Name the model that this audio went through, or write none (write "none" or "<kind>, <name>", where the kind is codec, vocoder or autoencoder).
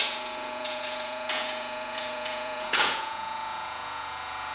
vocoder, Vocos